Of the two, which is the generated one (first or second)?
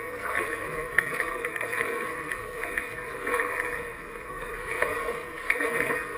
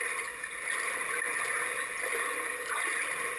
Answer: first